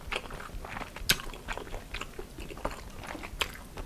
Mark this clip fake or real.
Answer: real